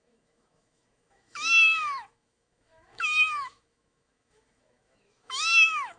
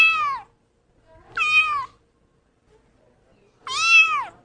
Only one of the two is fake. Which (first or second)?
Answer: first